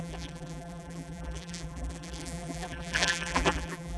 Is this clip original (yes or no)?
no